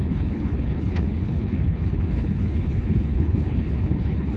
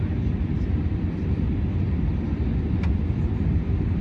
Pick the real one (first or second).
second